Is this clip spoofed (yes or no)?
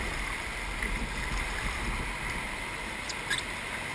no